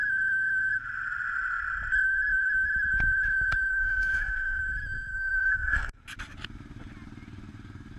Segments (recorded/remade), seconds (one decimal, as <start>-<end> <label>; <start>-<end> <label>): 0.0-3.7 recorded; 3.7-4.6 remade; 4.6-5.1 recorded; 5.1-6.0 remade; 6.0-8.0 recorded